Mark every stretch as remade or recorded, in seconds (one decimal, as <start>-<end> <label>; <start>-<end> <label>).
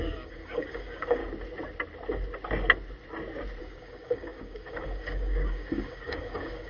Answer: 0.0-1.2 remade; 1.2-3.6 recorded; 3.6-6.7 remade